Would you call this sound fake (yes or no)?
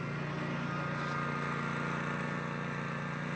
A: no